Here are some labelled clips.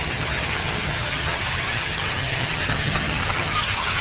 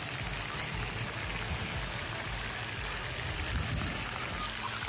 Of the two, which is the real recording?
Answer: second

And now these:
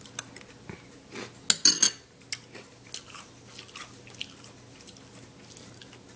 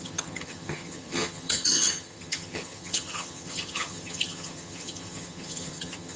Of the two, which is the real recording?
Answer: first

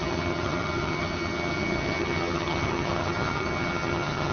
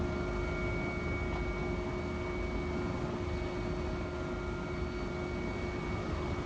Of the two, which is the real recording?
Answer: second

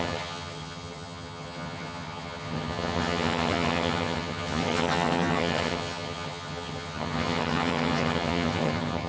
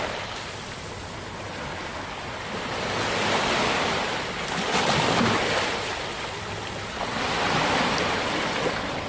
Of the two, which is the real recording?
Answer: second